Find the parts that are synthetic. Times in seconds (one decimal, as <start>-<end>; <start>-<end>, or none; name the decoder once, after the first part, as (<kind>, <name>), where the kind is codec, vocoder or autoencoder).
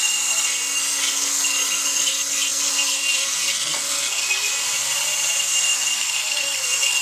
0.0-4.5 (codec, SNAC); 5.4-7.0